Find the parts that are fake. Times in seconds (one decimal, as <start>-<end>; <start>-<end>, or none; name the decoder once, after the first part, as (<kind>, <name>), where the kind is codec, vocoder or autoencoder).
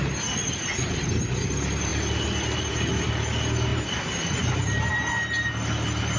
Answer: none